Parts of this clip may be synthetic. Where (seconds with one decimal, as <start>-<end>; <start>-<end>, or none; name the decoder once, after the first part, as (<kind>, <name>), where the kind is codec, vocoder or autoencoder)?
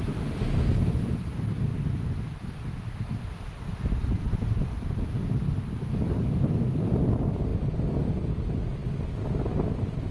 none